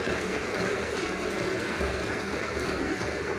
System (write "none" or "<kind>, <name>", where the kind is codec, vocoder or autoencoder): codec, SNAC